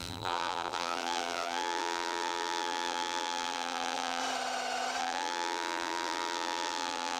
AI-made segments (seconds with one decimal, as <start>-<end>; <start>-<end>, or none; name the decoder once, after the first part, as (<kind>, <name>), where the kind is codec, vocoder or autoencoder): 0.0-4.2 (vocoder, BigVGAN v2); 5.0-7.2